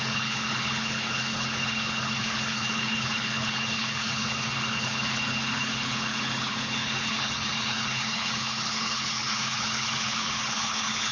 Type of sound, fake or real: fake